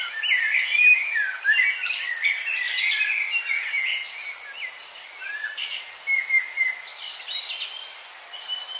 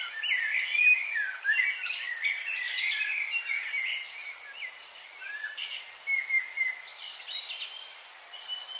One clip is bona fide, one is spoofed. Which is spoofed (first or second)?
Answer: second